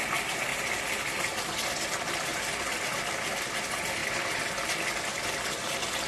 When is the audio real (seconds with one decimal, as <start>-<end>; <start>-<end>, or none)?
0.0-0.5; 3.6-6.1